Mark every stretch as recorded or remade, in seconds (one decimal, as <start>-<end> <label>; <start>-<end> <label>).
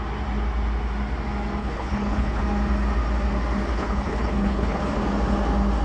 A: 0.0-1.6 recorded; 1.6-2.4 remade; 2.4-3.7 recorded; 3.7-4.8 remade; 4.8-5.8 recorded